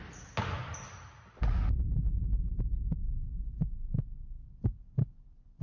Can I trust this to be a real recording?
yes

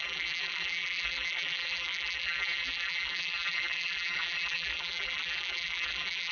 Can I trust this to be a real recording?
no